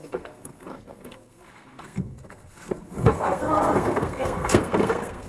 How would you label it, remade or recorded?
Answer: remade